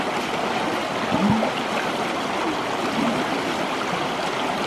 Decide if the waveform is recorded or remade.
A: recorded